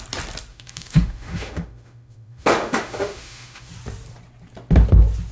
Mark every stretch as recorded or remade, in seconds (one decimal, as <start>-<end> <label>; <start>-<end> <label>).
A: 0.0-0.5 recorded; 0.5-3.7 remade; 3.7-5.3 recorded